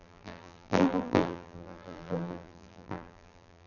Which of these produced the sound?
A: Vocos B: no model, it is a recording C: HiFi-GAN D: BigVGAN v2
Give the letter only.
D